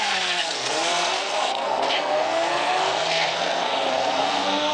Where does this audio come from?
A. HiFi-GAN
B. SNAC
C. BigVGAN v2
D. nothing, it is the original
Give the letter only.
B